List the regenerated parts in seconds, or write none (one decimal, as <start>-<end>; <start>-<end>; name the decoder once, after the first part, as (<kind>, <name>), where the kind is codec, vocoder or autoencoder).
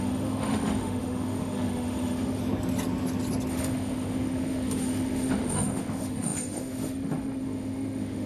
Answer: 0.0-2.4 (autoencoder, DAC-VAE); 3.5-8.3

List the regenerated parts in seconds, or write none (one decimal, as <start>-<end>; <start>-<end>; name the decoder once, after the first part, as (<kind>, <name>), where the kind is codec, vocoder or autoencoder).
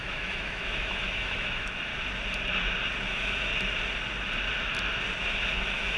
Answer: 0.0-1.9 (autoencoder, DAC-VAE); 3.1-3.5; 5.5-6.0